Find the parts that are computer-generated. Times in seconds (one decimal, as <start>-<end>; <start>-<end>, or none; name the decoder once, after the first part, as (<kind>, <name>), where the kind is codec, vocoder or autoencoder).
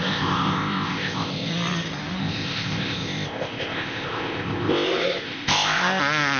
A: 0.0-1.5 (codec, ZipCodec); 2.2-6.0